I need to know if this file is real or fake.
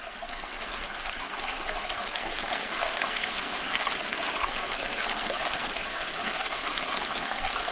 fake